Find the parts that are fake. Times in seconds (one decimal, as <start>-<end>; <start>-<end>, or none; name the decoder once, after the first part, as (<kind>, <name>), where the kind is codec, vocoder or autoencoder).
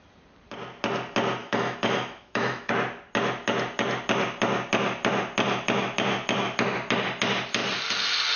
1.4-2.7 (autoencoder, DAC-VAE)